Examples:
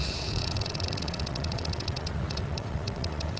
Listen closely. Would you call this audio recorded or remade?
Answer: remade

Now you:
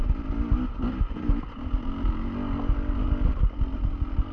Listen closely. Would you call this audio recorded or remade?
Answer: recorded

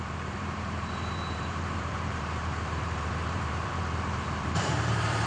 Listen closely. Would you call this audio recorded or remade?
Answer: remade